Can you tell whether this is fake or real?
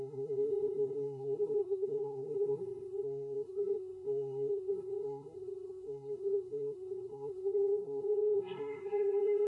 fake